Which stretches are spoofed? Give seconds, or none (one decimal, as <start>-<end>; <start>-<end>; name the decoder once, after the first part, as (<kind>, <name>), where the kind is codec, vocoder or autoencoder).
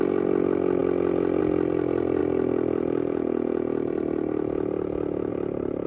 none